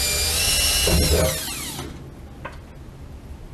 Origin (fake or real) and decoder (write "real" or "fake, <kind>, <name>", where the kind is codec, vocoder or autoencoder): real